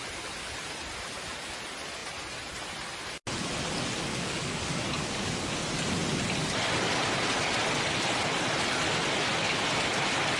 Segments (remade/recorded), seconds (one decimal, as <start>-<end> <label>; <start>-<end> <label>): 0.0-4.1 recorded; 4.1-5.5 remade; 5.5-10.4 recorded

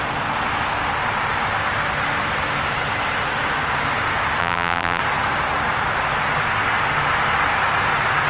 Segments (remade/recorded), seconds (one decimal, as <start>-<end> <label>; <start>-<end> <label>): 0.0-4.4 recorded; 4.4-5.0 remade; 5.0-8.3 recorded